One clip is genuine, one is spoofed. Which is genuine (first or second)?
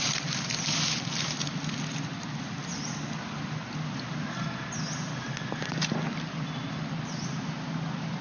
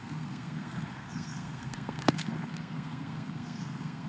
first